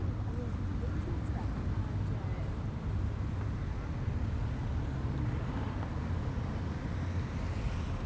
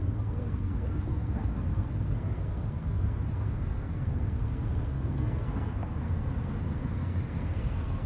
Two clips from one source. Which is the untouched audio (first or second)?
first